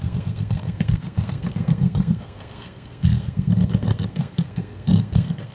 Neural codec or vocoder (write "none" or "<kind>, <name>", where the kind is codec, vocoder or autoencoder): codec, SNAC